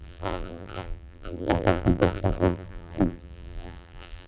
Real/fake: fake